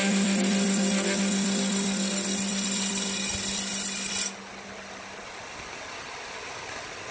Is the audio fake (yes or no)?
no